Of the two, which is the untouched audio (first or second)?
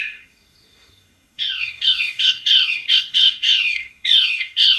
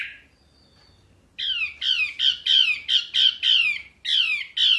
second